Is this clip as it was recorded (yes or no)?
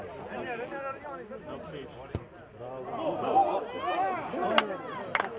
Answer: yes